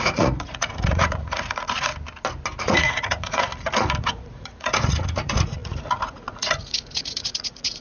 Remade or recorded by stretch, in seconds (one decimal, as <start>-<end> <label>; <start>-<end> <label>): 0.0-1.9 remade; 1.9-2.6 recorded; 2.6-3.5 remade; 3.5-4.0 recorded; 4.0-7.8 remade